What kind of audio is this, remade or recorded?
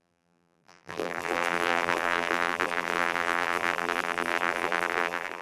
remade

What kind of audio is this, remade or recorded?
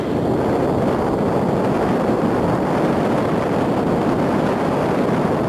recorded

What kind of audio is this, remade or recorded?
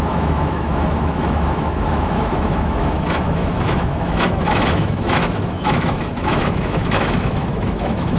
remade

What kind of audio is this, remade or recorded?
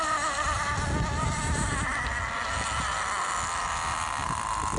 recorded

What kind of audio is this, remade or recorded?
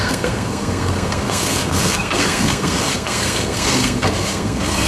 remade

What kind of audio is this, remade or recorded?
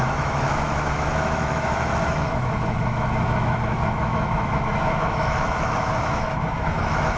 remade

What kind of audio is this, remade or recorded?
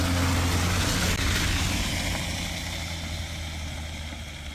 recorded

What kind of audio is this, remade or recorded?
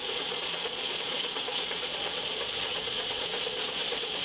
remade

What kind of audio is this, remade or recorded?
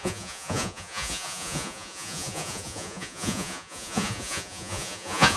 remade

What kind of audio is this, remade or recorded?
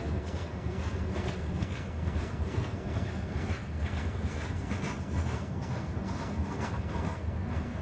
remade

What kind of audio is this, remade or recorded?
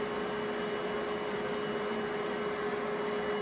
recorded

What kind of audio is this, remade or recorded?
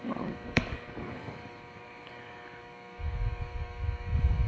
remade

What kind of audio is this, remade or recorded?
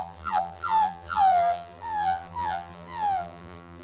remade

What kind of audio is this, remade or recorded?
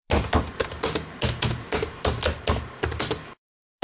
recorded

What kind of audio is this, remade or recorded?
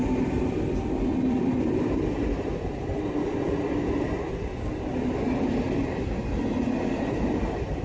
recorded